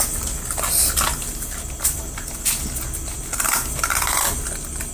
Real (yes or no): yes